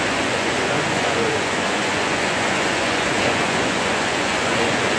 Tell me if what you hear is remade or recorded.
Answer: remade